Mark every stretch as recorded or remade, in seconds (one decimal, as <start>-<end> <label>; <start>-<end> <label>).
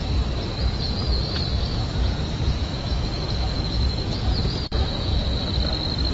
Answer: 0.0-0.5 recorded; 0.5-1.2 remade; 1.2-1.7 recorded; 1.7-5.4 remade; 5.4-6.1 recorded